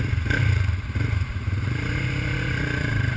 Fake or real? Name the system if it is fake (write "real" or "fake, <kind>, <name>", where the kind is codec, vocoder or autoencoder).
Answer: fake, vocoder, Vocos